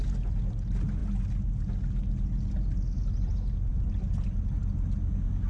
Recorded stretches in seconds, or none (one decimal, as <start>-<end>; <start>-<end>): 0.0-5.5